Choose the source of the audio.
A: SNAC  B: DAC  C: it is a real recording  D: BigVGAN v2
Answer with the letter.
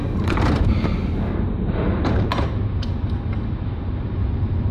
D